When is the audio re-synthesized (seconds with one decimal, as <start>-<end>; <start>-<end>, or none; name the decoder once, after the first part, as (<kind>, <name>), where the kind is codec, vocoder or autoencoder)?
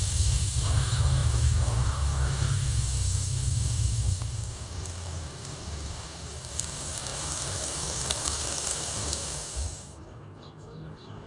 0.0-11.3 (codec, DAC)